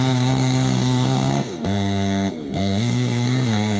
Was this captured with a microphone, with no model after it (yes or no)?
no